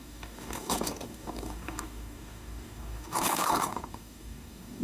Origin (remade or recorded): remade